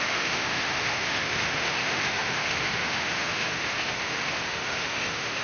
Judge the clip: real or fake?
fake